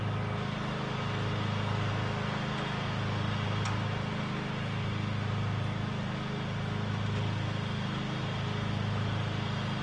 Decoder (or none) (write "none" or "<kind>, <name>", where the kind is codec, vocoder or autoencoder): none